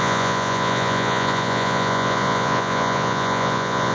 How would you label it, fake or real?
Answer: fake